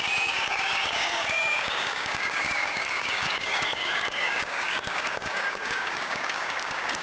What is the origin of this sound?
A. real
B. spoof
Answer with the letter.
B